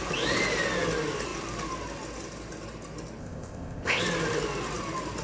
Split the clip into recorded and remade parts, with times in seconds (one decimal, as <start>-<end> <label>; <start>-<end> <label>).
0.0-3.2 recorded; 3.2-4.0 remade; 4.0-5.2 recorded